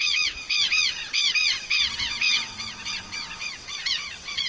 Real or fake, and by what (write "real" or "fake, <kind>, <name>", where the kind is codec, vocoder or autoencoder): fake, vocoder, WaveNeXt